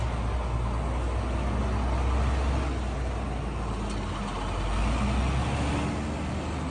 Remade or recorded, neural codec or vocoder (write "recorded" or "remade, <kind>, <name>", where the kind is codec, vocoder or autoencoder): recorded